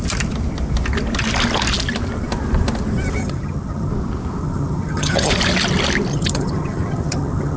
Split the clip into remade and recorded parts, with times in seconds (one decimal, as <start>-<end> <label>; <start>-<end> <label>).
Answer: 0.0-3.2 recorded; 3.2-3.9 remade; 3.9-4.4 recorded; 4.4-5.3 remade; 5.3-6.1 recorded; 6.1-7.6 remade